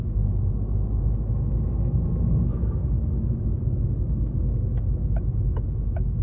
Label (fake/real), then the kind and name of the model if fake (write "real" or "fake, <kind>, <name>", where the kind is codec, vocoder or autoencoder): fake, autoencoder, DAC-VAE